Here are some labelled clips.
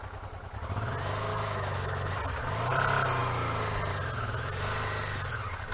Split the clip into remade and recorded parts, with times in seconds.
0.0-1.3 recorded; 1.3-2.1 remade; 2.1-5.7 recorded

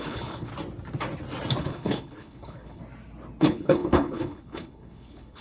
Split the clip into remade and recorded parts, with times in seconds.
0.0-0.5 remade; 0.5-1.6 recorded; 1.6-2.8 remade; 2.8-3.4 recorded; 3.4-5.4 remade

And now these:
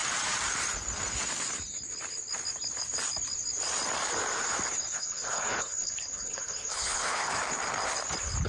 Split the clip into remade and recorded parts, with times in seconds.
0.0-4.9 recorded; 4.9-7.4 remade; 7.4-8.5 recorded

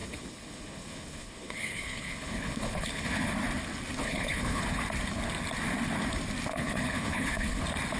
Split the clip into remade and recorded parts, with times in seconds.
0.0-3.3 remade; 3.3-4.0 recorded; 4.0-4.6 remade; 4.6-6.5 recorded; 6.5-7.6 remade; 7.6-8.0 recorded

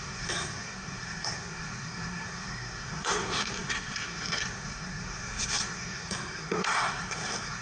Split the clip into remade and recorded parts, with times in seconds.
0.0-7.6 remade